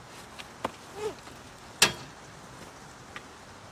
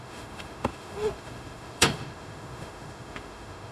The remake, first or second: second